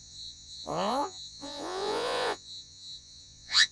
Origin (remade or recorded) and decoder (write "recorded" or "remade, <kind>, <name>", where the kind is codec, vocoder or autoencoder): remade, vocoder, Vocos